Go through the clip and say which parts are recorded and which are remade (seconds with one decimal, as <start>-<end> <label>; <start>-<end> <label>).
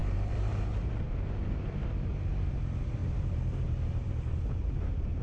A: 0.0-5.2 remade